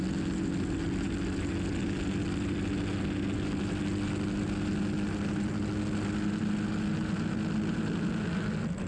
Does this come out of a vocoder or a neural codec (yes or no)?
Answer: no